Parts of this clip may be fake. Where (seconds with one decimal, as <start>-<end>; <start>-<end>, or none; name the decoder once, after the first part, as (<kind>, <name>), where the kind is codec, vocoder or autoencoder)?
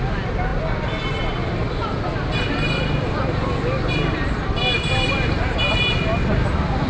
none